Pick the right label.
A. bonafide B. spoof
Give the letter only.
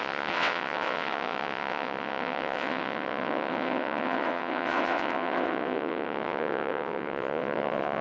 B